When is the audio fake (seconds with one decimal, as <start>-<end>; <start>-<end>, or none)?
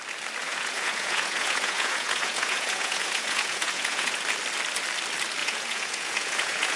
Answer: 0.4-4.2; 5.4-6.8